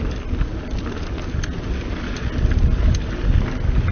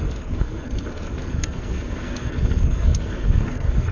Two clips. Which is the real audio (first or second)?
first